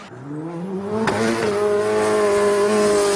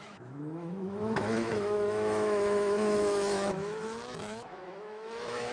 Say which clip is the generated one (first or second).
second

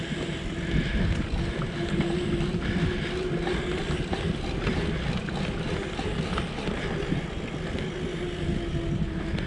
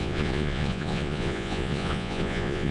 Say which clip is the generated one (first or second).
second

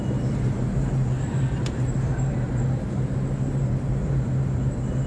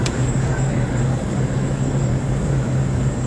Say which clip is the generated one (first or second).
second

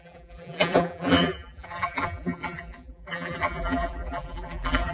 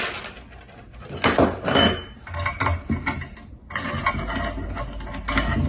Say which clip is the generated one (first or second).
first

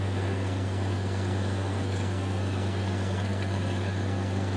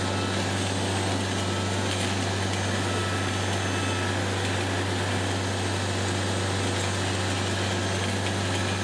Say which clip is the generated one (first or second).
first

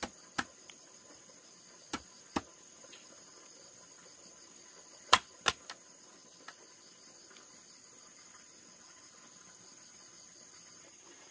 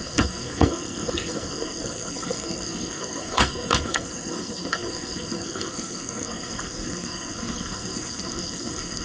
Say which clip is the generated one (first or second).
second